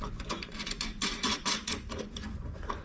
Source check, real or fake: fake